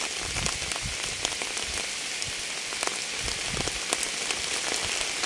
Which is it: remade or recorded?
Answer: recorded